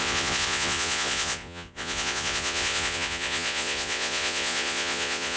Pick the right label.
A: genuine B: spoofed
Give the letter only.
B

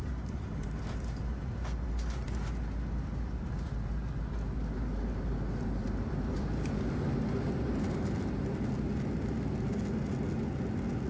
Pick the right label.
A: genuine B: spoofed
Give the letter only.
A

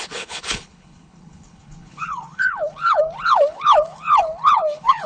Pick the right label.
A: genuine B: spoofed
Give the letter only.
B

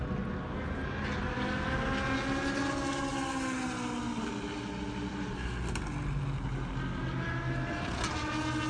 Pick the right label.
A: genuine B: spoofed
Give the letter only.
A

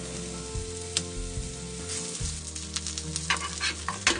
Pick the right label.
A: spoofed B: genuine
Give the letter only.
B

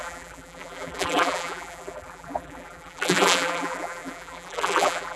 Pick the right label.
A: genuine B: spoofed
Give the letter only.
B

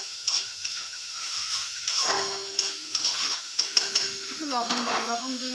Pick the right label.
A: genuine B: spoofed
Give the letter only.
B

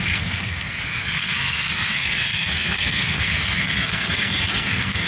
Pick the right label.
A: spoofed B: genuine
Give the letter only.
A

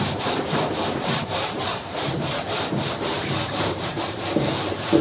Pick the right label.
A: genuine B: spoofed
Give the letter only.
B